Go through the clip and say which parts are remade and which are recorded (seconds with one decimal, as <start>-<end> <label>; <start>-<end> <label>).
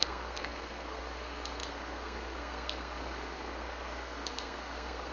0.0-5.1 remade